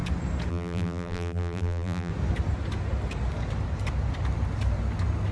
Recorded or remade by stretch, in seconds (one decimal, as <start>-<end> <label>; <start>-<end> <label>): 0.0-0.5 recorded; 0.5-2.1 remade; 2.1-5.3 recorded